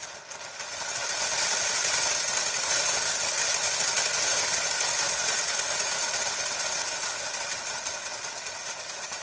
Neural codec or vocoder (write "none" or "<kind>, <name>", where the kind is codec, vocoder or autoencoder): none